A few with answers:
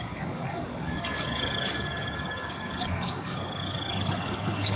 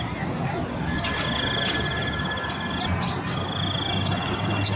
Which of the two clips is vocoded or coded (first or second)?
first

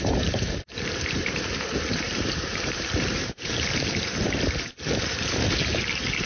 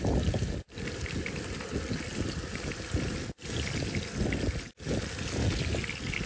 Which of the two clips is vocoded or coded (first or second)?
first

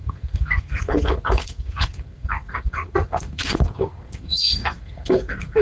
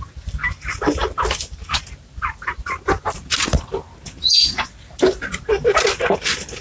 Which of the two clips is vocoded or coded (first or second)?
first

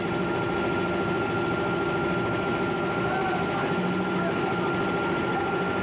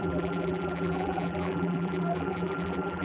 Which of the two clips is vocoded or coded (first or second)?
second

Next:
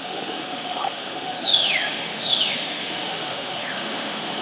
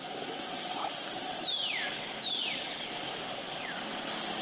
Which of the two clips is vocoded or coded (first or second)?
first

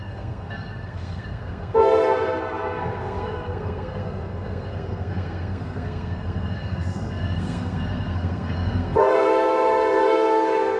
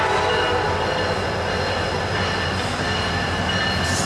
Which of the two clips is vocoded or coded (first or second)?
first